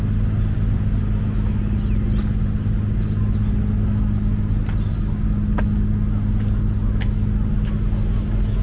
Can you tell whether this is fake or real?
real